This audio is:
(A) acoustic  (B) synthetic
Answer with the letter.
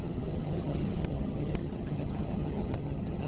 B